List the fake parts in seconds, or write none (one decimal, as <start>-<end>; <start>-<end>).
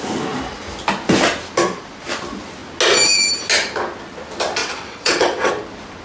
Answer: 4.6-5.5